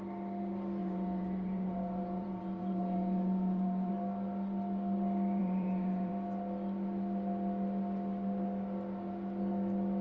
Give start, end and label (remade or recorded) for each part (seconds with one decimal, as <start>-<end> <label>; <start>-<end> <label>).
0.0-0.8 recorded; 0.8-3.9 remade; 3.9-5.4 recorded; 5.4-6.1 remade; 6.1-10.0 recorded